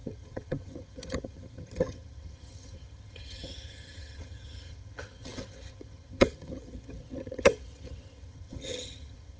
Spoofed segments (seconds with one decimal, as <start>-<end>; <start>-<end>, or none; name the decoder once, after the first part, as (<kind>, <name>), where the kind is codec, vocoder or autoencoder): 0.0-9.4 (vocoder, HiFi-GAN)